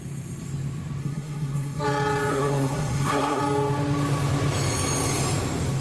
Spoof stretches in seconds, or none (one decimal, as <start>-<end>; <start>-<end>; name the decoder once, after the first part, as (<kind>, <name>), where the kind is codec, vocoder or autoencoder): 1.0-1.8 (codec, SNAC); 2.3-3.4

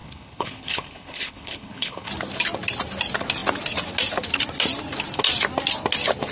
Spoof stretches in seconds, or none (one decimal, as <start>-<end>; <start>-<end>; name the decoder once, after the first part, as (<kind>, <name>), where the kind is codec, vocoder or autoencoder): 0.0-2.1 (codec, HILCodec)

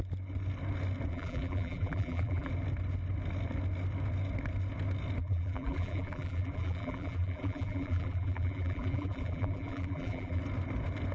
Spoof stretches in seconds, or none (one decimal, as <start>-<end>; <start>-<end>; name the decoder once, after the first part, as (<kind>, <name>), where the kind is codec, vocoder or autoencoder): 1.1-2.5 (vocoder, BigVGAN v2); 5.2-10.4

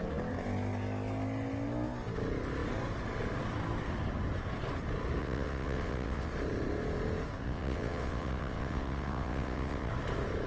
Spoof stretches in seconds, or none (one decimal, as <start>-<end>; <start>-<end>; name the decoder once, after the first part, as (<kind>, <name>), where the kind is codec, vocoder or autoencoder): 5.2-6.3 (vocoder, WaveNeXt); 7.4-9.9

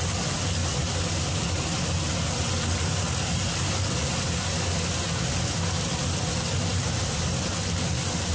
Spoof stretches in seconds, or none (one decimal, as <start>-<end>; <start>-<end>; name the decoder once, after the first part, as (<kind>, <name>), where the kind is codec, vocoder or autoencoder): none

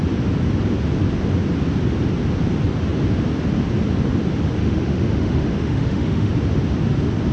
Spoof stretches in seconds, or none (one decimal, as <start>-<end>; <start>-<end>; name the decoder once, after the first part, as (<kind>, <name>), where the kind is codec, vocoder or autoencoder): 4.6-6.3 (autoencoder, DAC-VAE)

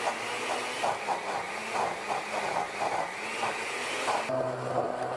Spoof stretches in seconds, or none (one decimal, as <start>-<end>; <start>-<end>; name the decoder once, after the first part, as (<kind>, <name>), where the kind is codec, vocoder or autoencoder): none